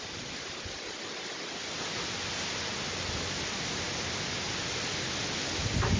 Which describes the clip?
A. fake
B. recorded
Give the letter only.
B